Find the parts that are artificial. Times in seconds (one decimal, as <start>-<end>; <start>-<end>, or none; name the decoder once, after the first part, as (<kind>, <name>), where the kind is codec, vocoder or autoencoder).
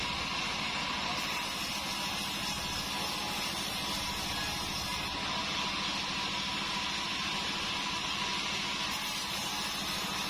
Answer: none